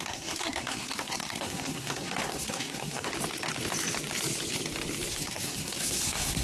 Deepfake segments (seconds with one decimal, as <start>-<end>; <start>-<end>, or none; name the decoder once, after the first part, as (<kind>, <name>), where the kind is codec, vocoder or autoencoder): 0.0-3.1 (codec, SNAC); 5.1-6.4